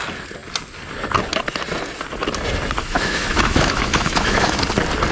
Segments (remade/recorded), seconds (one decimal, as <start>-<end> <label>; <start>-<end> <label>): 0.0-2.8 recorded; 2.8-4.6 remade; 4.6-5.1 recorded